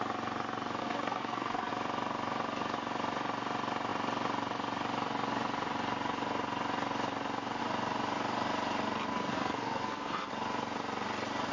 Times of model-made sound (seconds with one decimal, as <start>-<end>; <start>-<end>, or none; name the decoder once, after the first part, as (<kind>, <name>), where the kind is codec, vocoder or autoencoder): 0.8-1.7 (codec, SNAC); 9.1-10.3